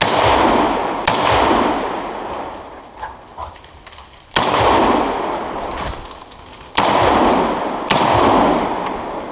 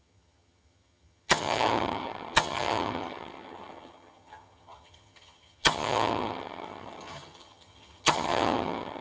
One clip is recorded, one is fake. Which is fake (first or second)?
second